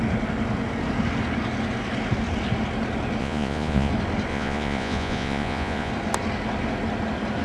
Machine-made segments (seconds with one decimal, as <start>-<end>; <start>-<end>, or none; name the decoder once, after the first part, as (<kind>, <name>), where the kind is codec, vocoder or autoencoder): 3.2-3.9 (vocoder, Vocos); 4.3-5.9